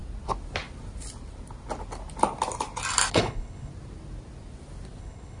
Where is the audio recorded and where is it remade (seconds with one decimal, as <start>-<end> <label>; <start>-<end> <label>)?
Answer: 0.0-3.1 recorded; 3.1-3.7 remade; 3.7-5.0 recorded; 5.0-5.4 remade